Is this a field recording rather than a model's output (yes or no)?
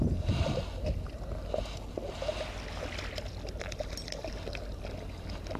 yes